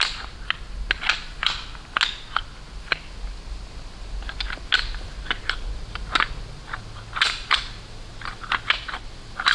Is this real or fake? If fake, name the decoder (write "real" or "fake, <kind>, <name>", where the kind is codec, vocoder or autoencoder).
real